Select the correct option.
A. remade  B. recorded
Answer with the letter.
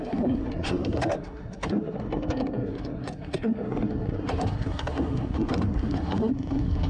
A